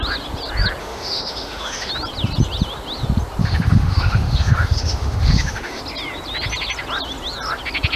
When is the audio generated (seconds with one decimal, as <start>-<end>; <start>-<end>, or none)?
0.8-1.9; 3.4-5.8